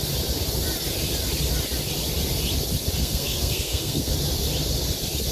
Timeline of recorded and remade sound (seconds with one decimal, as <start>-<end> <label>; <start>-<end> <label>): 0.0-3.0 recorded; 3.0-4.1 remade; 4.1-5.3 recorded